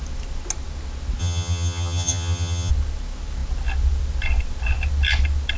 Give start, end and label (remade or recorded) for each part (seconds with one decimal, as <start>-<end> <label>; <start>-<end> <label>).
0.0-1.2 recorded; 1.2-2.7 remade; 2.7-5.6 recorded